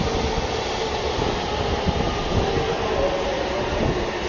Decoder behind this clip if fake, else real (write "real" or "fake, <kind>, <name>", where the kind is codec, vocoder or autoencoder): real